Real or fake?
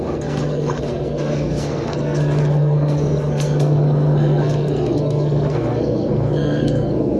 fake